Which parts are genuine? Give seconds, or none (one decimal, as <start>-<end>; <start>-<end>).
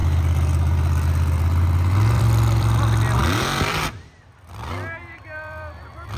0.0-2.2